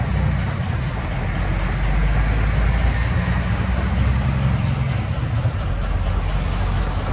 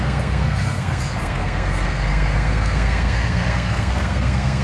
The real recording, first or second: first